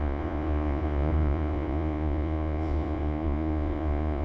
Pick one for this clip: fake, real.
fake